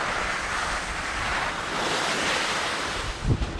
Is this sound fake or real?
real